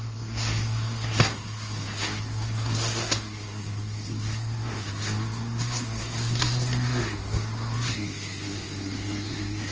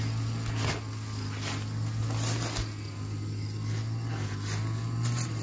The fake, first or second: first